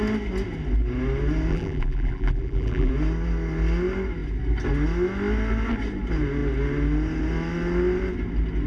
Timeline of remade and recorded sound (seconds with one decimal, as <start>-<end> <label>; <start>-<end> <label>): 0.0-1.5 recorded; 1.5-2.9 remade; 2.9-8.7 recorded